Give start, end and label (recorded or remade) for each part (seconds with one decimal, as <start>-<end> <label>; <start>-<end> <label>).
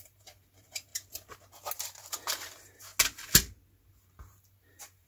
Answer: 0.0-0.9 remade; 0.9-2.0 recorded; 2.0-2.9 remade; 2.9-3.9 recorded; 3.9-5.1 remade